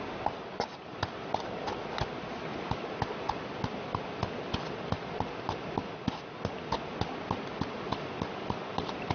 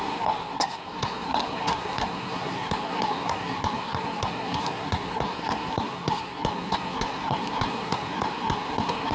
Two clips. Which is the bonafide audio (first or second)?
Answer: first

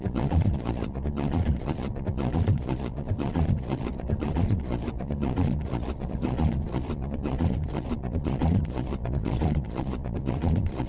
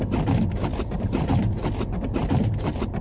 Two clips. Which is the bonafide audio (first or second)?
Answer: second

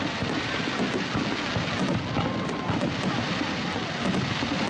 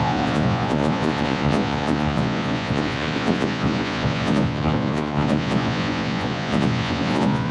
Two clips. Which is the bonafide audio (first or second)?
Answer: first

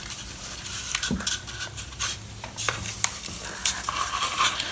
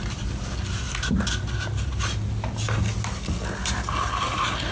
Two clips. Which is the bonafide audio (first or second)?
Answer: second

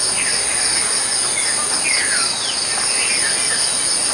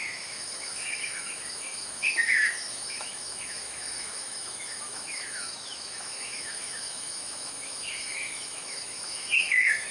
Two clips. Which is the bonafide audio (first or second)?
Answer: first